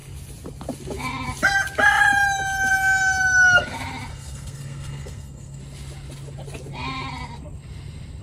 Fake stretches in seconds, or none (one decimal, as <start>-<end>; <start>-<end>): 4.1-5.6